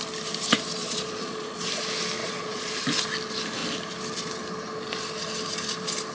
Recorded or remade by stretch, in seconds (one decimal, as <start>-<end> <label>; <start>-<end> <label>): 0.0-0.8 recorded; 0.8-1.7 remade; 1.7-2.2 recorded; 2.2-2.7 remade; 2.7-6.1 recorded